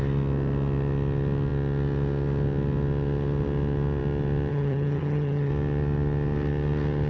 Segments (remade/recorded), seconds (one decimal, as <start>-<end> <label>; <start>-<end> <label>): 0.0-4.5 recorded; 4.5-5.5 remade; 5.5-7.1 recorded